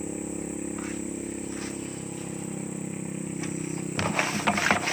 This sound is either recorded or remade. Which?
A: recorded